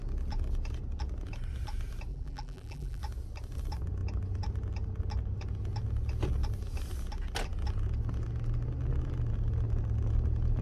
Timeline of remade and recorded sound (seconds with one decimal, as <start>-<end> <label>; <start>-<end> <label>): 0.0-2.1 recorded; 2.1-3.0 remade; 3.0-10.6 recorded